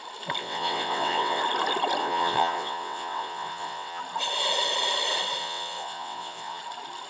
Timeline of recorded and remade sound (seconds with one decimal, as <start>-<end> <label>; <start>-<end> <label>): 0.0-0.4 recorded; 0.4-1.4 remade; 1.4-2.0 recorded; 2.0-4.0 remade; 4.0-5.4 recorded; 5.4-6.6 remade; 6.6-7.1 recorded